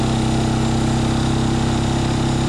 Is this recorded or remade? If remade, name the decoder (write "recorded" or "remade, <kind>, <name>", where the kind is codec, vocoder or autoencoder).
recorded